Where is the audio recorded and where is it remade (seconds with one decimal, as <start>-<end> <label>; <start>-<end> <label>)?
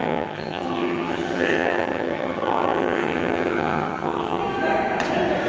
0.0-4.4 remade; 4.4-5.5 recorded